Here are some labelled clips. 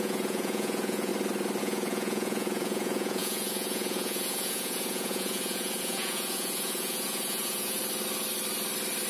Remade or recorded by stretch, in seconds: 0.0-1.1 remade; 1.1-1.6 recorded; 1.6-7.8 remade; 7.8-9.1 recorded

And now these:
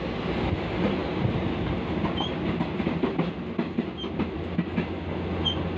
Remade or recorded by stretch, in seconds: 0.0-5.8 recorded

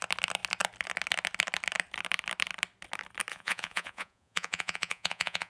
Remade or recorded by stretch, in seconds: 0.0-3.3 recorded; 3.3-5.5 remade

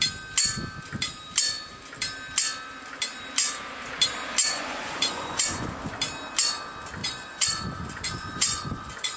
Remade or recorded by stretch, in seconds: 0.0-4.4 recorded; 4.4-5.7 remade; 5.7-7.0 recorded; 7.0-9.2 remade

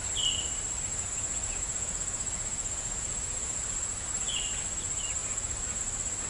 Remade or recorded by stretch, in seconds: 0.0-0.9 recorded; 0.9-4.4 remade; 4.4-5.2 recorded; 5.2-5.8 remade; 5.8-6.3 recorded